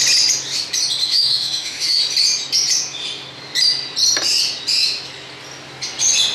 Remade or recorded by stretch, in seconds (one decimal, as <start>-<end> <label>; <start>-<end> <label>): 0.0-1.0 recorded; 1.0-2.0 remade; 2.0-6.3 recorded

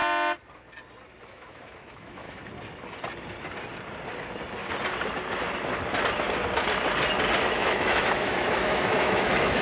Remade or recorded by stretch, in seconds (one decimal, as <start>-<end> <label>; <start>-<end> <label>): 0.0-1.3 recorded; 1.3-2.4 remade; 2.4-7.4 recorded; 7.4-9.6 remade